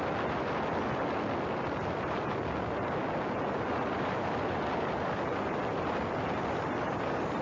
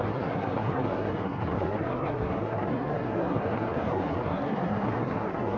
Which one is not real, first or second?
second